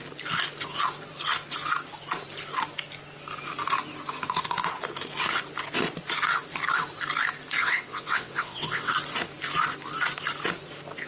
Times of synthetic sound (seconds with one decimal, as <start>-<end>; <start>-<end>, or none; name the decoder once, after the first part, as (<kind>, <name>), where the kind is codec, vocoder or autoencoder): 7.6-8.9 (vocoder, WaveNeXt)